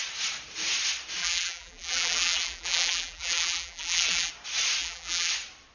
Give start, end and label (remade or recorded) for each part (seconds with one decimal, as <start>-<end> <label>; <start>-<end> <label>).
0.0-1.2 recorded; 1.2-4.3 remade; 4.3-4.8 recorded; 4.8-5.3 remade; 5.3-5.7 recorded